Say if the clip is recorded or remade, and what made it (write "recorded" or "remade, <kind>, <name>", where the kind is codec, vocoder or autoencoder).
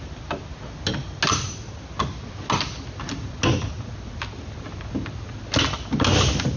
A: recorded